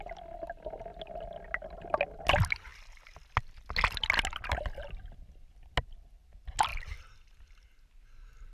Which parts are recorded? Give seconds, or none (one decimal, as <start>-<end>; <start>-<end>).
0.0-8.5